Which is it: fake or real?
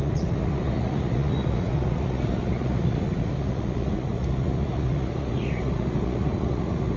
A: fake